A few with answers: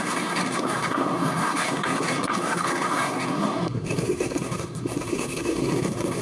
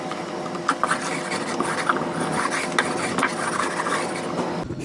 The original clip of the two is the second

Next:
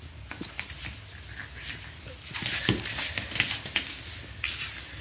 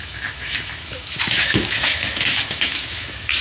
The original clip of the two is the first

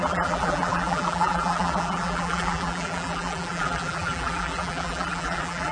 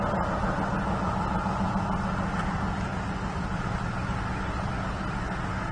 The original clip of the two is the second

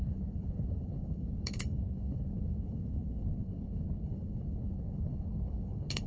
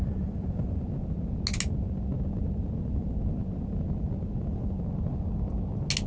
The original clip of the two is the second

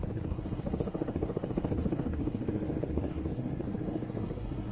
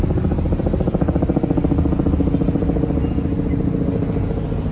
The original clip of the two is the second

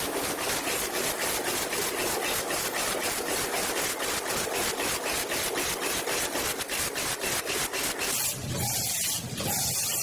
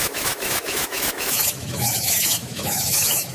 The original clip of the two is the first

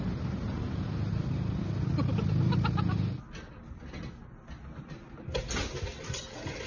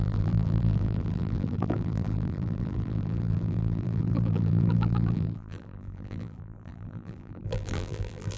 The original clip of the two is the first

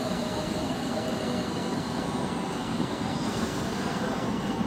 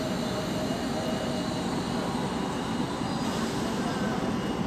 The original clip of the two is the second